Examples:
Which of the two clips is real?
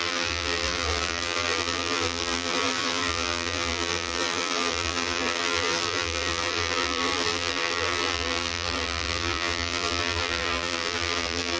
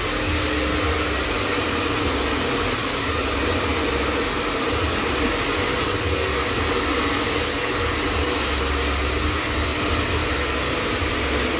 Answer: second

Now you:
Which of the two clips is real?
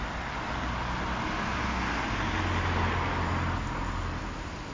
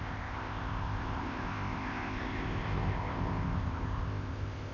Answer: first